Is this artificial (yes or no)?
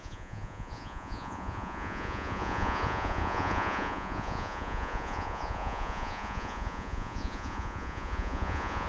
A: yes